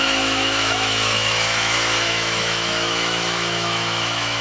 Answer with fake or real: fake